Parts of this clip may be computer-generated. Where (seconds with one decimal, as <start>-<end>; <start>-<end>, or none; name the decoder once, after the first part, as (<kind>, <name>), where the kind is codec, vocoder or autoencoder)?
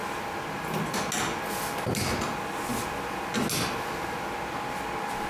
none